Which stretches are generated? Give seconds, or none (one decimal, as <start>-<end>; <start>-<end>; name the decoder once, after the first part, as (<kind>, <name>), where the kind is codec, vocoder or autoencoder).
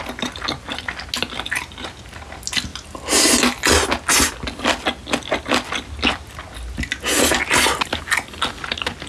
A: none